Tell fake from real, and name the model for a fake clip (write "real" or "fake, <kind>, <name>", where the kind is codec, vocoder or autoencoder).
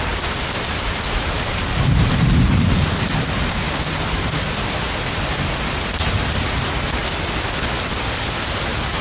real